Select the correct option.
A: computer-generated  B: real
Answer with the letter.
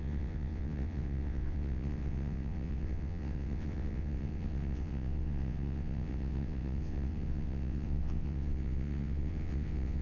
A